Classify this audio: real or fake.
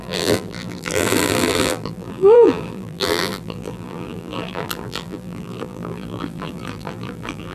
fake